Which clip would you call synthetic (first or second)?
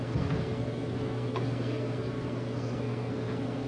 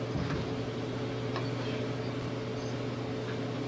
first